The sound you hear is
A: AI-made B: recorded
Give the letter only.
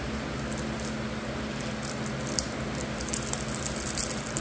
B